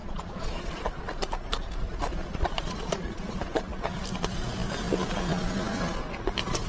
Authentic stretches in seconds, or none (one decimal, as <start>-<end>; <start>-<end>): 1.0-2.1; 3.4-6.7